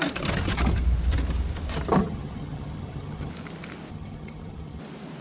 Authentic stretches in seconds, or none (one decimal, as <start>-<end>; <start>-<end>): 0.0-2.0; 3.3-3.9; 4.8-5.2